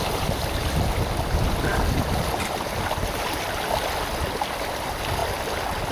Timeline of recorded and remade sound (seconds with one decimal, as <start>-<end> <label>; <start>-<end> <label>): 0.0-5.9 recorded